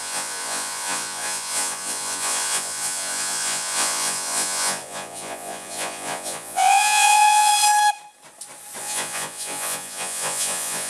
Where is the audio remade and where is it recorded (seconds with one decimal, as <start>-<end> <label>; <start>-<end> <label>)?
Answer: 0.0-7.5 remade; 7.5-8.8 recorded; 8.8-10.9 remade